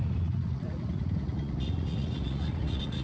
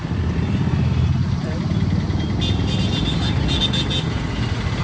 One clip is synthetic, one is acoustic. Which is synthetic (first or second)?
first